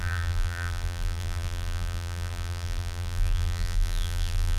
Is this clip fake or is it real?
fake